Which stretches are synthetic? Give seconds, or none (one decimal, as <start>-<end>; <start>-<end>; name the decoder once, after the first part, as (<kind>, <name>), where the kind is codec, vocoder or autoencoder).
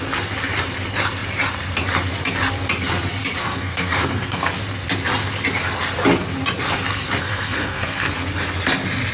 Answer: 3.4-4.5 (codec, SNAC); 7.2-8.1